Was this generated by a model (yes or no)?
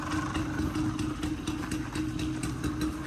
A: no